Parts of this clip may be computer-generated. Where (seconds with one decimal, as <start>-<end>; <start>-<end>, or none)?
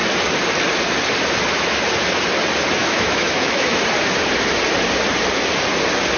2.8-3.8